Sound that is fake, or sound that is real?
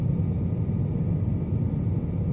real